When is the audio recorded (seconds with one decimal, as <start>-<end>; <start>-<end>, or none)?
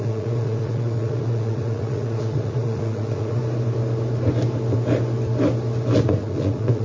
3.4-6.0